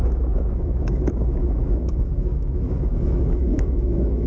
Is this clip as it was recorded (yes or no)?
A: no